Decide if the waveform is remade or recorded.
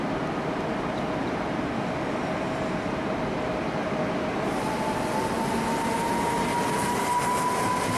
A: recorded